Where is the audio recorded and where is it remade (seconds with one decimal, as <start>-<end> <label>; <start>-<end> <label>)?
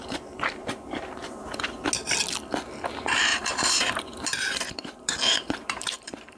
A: 0.0-1.9 remade; 1.9-3.3 recorded; 3.3-6.4 remade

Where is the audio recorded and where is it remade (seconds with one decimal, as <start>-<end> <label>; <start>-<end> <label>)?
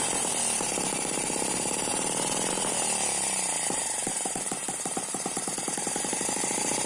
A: 0.0-6.9 remade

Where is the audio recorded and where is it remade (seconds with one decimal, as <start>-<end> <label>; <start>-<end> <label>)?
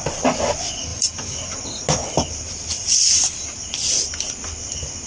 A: 0.0-0.9 recorded; 0.9-1.6 remade; 1.6-2.7 recorded; 2.7-3.8 remade; 3.8-5.1 recorded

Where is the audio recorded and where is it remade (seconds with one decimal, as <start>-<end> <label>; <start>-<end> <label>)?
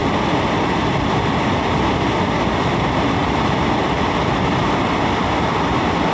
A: 0.0-1.1 remade; 1.1-6.1 recorded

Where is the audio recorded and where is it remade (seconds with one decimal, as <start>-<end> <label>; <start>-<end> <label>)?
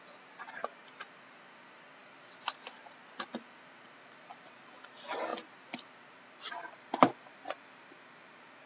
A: 0.0-8.7 recorded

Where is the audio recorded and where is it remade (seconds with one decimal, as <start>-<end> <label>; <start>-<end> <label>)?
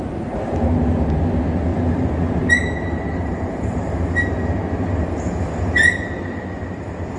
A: 0.0-1.7 recorded; 1.7-4.1 remade; 4.1-7.2 recorded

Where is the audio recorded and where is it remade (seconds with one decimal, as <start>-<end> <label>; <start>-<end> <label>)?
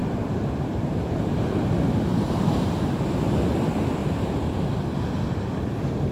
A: 0.0-1.6 remade; 1.6-2.1 recorded; 2.1-2.7 remade; 2.7-4.0 recorded; 4.0-4.7 remade; 4.7-6.1 recorded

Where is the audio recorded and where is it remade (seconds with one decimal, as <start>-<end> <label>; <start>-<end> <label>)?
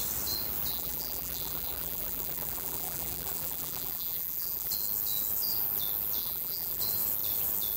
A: 0.0-0.7 recorded; 0.7-4.7 remade; 4.7-6.2 recorded; 6.2-6.8 remade; 6.8-7.8 recorded